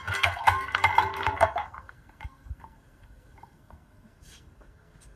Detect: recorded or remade remade